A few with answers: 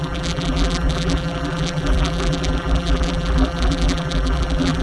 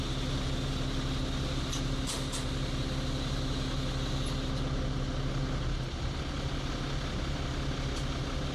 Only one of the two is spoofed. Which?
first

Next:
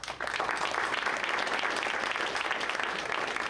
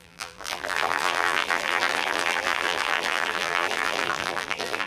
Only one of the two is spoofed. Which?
second